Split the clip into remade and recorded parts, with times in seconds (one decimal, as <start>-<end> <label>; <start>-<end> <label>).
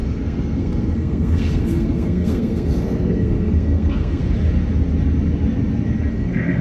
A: 0.0-4.2 remade; 4.2-6.1 recorded; 6.1-6.6 remade